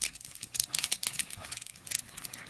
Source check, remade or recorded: remade